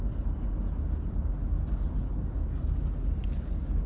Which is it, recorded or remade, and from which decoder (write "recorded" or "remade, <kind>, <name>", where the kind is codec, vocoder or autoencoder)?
recorded